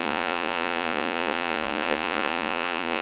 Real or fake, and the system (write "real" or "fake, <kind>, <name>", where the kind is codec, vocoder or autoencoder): fake, vocoder, Vocos